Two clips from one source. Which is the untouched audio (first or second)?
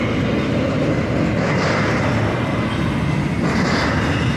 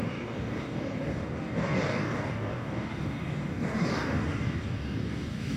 first